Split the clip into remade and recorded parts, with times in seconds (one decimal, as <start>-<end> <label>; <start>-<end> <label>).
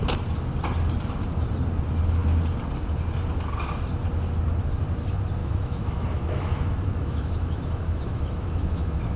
0.0-5.4 recorded; 5.4-9.2 remade